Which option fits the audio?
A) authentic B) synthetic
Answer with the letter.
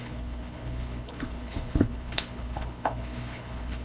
B